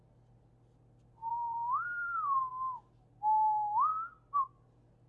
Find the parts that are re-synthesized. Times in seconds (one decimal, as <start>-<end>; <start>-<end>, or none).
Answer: 1.3-2.5